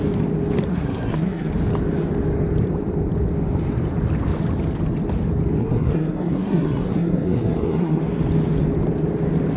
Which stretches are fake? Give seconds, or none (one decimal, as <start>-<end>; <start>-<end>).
0.7-1.5; 5.6-8.0